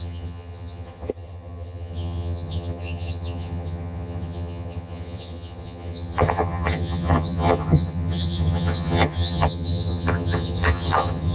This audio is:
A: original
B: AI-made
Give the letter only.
B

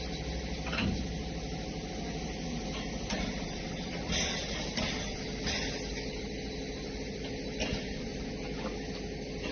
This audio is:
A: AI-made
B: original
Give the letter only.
B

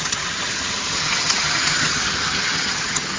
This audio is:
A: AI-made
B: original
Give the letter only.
A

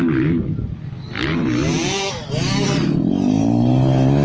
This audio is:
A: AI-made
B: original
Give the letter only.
B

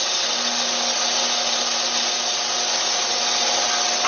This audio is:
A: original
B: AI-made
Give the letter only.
A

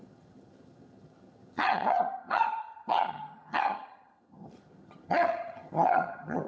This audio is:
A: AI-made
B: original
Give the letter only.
A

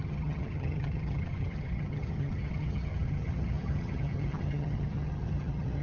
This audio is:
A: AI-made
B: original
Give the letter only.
A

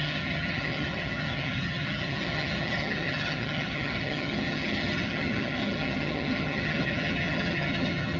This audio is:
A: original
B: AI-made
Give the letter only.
B